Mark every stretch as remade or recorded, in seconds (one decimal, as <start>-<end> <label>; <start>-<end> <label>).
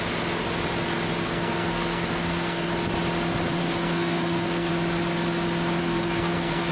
0.0-1.2 recorded; 1.2-2.7 remade; 2.7-3.6 recorded; 3.6-4.7 remade; 4.7-5.8 recorded; 5.8-6.7 remade